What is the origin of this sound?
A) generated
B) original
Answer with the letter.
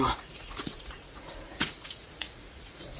A